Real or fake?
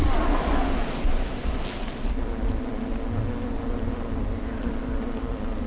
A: real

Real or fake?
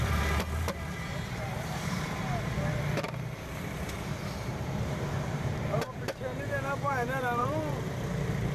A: fake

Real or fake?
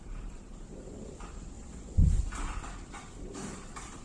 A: fake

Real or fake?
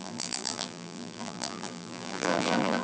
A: fake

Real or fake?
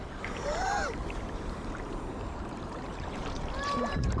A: fake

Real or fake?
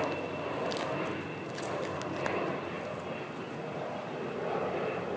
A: real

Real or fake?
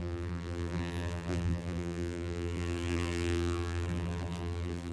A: fake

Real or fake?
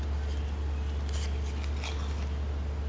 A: real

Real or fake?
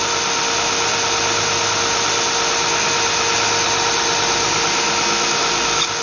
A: real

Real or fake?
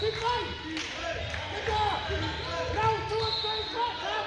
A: real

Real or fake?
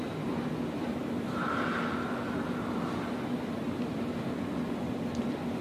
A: fake